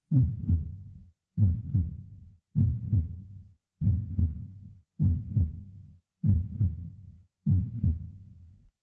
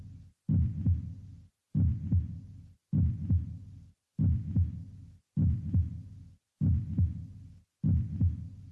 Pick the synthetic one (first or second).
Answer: first